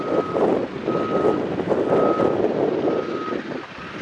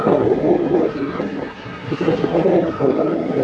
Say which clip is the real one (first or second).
first